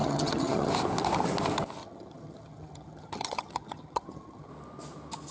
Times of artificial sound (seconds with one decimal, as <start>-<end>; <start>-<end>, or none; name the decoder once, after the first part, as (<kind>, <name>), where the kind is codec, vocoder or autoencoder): 0.0-0.7 (vocoder, HiFi-GAN); 1.8-4.5